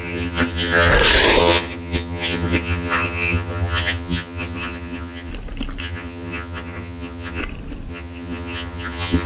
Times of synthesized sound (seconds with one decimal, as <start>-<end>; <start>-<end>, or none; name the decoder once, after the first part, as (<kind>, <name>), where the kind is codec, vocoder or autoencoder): 0.0-0.9 (vocoder, HiFi-GAN); 1.4-5.3; 5.8-7.4; 7.9-9.3